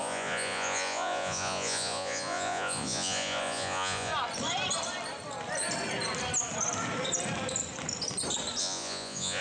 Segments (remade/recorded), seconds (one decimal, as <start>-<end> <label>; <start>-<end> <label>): 0.0-4.1 remade; 4.1-8.6 recorded; 8.6-9.4 remade